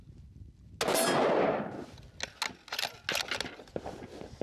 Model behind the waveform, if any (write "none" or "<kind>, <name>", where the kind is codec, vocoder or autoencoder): none